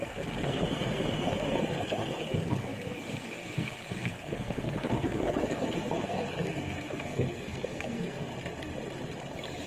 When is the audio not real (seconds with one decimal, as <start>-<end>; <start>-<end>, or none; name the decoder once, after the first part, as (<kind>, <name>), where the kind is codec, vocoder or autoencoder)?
0.0-8.3 (codec, SNAC)